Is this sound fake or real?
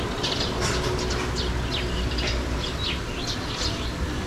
real